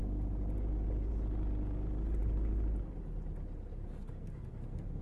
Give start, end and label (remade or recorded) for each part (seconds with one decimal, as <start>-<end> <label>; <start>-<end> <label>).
0.0-4.0 recorded; 4.0-5.0 remade